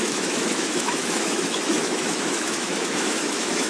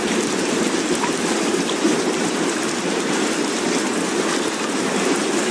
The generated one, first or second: first